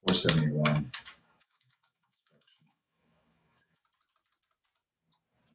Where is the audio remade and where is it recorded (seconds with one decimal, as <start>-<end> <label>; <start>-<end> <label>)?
0.0-0.5 recorded; 0.5-3.8 remade; 3.8-5.5 recorded